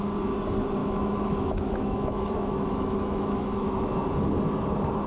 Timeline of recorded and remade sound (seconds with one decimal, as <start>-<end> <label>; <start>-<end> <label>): 0.0-0.8 recorded; 0.8-3.9 remade; 3.9-5.1 recorded